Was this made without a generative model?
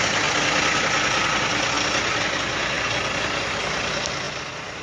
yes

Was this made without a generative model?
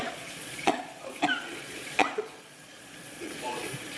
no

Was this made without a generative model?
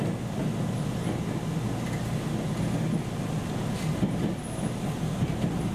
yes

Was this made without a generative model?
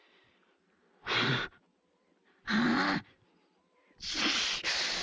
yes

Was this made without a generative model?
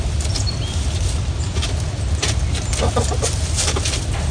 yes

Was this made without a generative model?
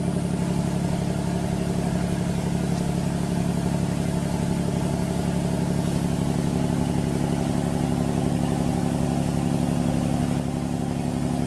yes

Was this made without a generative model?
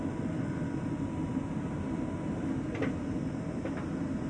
yes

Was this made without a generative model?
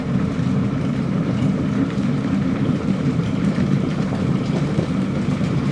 no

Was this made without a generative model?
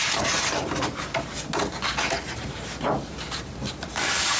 yes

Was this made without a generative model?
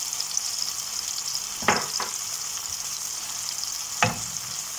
no